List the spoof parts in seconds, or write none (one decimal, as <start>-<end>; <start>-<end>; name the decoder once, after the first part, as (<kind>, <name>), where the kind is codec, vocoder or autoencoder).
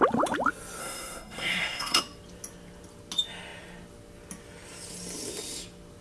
0.8-2.0 (codec, SNAC)